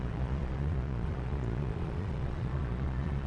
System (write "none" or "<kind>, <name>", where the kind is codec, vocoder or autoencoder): vocoder, Vocos